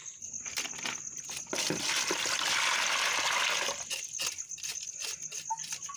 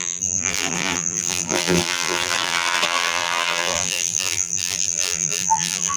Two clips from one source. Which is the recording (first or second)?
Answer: first